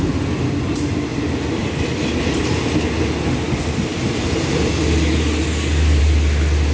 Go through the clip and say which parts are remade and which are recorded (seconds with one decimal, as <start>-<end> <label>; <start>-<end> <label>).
0.0-1.1 recorded; 1.1-1.8 remade; 1.8-6.7 recorded